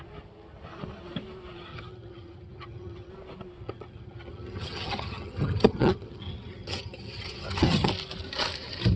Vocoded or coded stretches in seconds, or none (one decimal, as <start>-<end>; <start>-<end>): 1.7-3.1; 3.6-7.9